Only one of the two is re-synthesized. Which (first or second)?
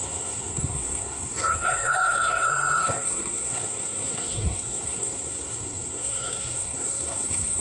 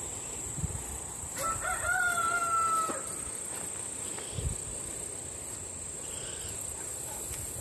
first